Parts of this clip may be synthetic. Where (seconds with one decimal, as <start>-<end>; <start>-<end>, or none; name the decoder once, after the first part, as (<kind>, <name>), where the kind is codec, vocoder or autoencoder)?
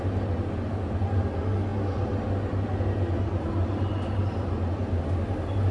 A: none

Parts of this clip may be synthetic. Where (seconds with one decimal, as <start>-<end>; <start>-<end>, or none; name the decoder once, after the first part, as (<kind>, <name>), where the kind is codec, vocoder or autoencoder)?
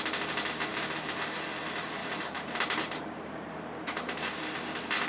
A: 0.7-1.4 (vocoder, BigVGAN v2); 2.0-4.5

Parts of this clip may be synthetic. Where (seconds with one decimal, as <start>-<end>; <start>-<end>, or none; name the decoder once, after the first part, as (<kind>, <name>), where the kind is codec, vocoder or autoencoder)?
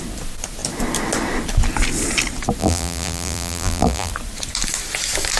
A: 2.6-4.1 (vocoder, BigVGAN v2)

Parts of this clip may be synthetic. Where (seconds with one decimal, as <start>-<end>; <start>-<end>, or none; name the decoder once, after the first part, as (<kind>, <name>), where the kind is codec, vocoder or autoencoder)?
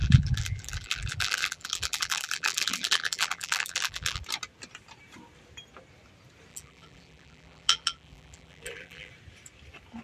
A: 0.0-4.2 (vocoder, BigVGAN v2); 6.5-9.1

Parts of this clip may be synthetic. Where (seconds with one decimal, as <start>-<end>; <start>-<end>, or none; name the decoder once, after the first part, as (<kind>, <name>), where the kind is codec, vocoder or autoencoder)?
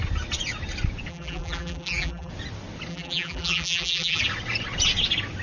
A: 1.1-2.3 (vocoder, BigVGAN v2); 2.9-4.2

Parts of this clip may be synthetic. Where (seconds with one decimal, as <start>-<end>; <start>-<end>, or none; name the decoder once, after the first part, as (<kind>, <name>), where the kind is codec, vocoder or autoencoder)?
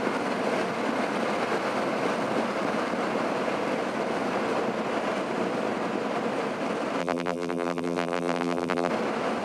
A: 7.0-8.9 (vocoder, BigVGAN v2)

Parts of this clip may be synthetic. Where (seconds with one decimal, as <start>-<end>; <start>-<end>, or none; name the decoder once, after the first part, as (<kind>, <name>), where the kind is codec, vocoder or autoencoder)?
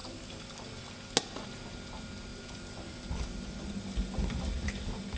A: 0.0-0.8 (vocoder, BigVGAN v2); 2.3-4.7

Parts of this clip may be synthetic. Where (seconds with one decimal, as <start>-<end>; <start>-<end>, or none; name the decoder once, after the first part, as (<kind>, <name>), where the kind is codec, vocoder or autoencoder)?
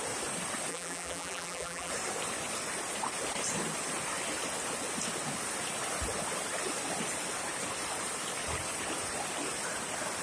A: 0.7-1.9 (vocoder, BigVGAN v2)